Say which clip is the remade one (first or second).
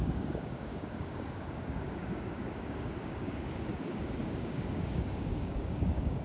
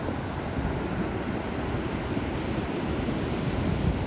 first